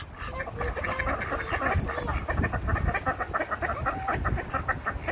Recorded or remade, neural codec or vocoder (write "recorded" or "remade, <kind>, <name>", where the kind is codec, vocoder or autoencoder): recorded